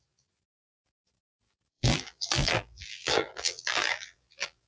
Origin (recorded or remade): remade